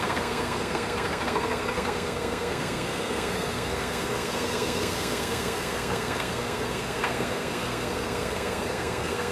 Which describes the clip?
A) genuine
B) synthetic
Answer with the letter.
B